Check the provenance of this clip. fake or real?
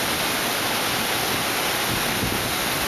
real